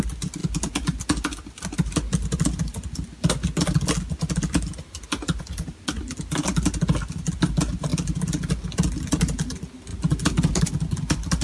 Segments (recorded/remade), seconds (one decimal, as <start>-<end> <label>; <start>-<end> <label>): 0.0-11.4 recorded